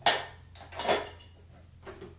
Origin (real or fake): real